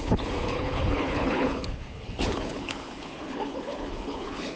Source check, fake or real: fake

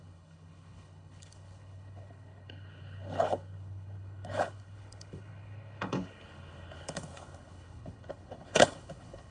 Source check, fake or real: fake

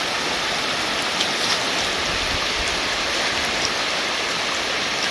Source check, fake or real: real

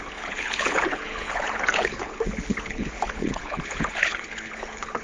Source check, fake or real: fake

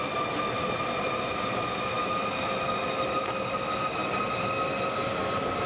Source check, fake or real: real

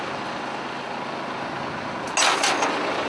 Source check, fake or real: real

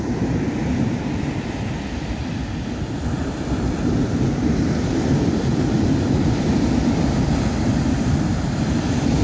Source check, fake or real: real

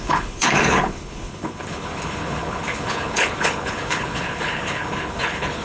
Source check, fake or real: fake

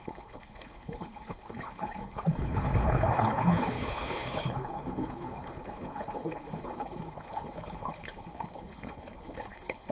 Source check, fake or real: fake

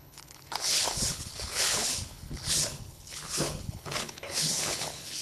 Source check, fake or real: fake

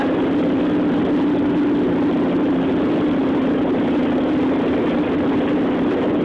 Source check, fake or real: real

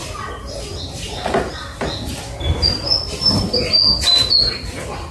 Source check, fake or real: real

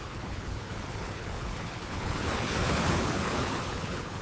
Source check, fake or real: fake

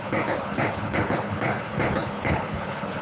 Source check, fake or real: fake